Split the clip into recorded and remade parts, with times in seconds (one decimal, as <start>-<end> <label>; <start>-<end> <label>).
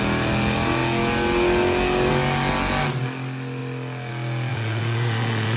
0.0-4.5 recorded; 4.5-5.6 remade